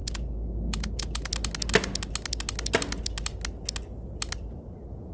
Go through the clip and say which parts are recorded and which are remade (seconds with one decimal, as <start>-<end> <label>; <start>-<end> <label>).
0.0-5.1 recorded